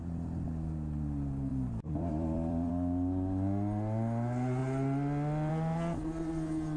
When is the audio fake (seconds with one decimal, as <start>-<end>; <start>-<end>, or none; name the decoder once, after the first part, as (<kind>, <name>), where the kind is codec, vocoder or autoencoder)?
1.5-2.7 (vocoder, BigVGAN v2)